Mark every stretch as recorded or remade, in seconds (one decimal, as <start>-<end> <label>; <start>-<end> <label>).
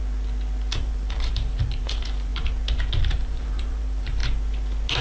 0.0-0.8 recorded; 0.8-2.3 remade; 2.3-3.0 recorded; 3.0-4.2 remade; 4.2-5.0 recorded